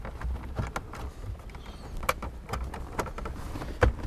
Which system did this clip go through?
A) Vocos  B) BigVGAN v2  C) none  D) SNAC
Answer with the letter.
C